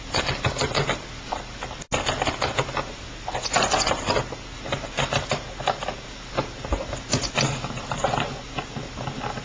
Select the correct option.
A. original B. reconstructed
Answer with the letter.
A